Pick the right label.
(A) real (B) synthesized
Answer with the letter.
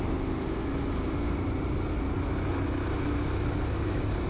A